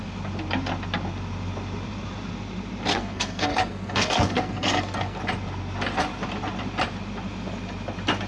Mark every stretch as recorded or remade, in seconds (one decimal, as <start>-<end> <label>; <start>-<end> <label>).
0.0-2.9 recorded; 2.9-5.2 remade; 5.2-8.3 recorded